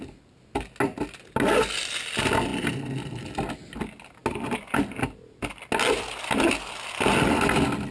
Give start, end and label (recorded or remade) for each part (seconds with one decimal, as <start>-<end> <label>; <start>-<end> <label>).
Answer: 0.0-7.9 recorded